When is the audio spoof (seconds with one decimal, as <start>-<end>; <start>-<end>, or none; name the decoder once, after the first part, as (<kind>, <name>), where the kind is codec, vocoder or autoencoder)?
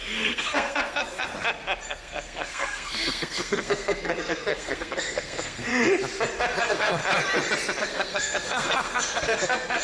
0.0-1.3 (codec, SNAC); 1.9-5.7; 6.6-7.0; 7.8-9.8